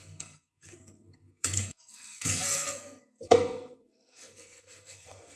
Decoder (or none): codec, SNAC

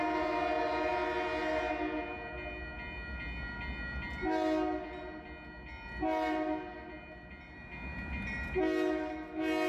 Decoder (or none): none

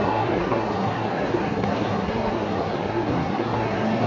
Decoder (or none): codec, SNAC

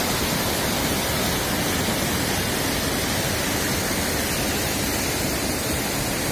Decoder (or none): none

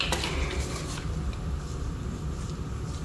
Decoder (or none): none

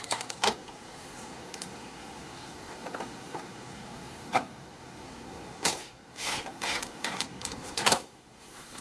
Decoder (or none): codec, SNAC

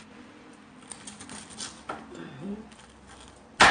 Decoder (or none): none